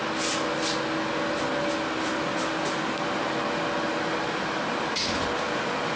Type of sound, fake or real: real